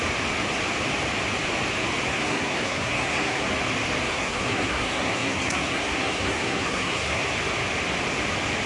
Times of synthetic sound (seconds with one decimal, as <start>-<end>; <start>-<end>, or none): 2.1-3.5; 4.1-7.3

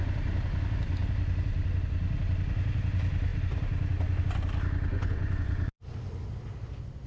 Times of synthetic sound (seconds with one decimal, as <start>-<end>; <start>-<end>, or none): 4.9-5.8

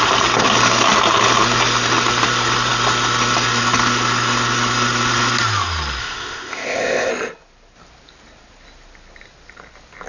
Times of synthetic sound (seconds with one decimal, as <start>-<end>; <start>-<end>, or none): 6.0-7.1

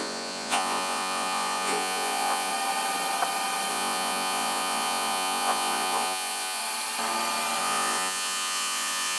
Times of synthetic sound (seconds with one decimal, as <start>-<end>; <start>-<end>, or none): 0.0-2.5; 3.7-6.6; 7.6-9.2

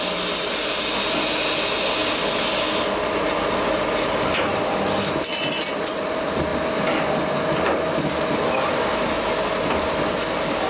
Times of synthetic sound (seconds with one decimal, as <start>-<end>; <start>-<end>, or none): none